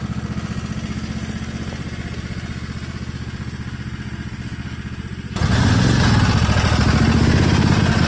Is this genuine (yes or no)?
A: yes